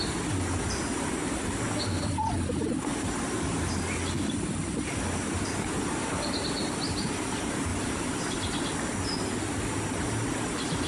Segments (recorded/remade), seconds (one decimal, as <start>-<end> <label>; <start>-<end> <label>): 0.0-2.9 recorded; 2.9-4.5 remade; 4.5-6.0 recorded; 6.0-7.1 remade; 7.1-7.7 recorded; 7.7-8.2 remade; 8.2-10.9 recorded